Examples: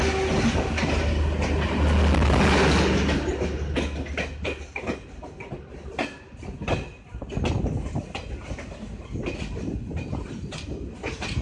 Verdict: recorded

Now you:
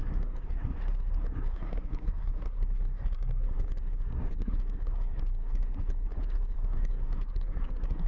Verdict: remade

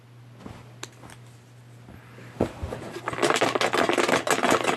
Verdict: recorded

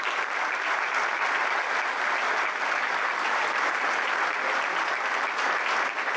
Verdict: recorded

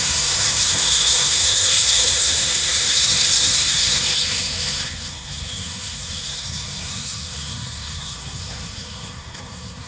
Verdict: remade